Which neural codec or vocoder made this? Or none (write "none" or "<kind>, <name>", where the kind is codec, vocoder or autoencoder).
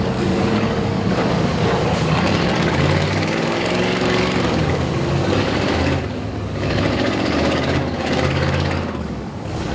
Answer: codec, DAC